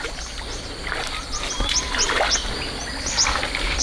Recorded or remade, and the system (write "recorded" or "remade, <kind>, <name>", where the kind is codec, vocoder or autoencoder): recorded